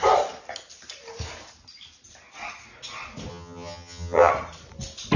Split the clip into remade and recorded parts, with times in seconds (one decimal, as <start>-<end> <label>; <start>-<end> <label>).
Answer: 0.0-3.3 recorded; 3.3-4.3 remade; 4.3-5.2 recorded